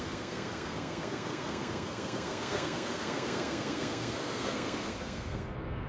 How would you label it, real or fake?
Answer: fake